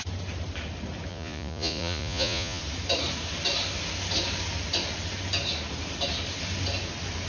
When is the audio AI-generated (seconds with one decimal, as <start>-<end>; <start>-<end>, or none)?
1.1-2.6